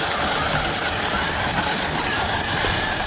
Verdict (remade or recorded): recorded